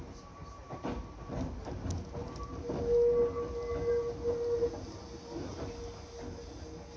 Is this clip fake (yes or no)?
no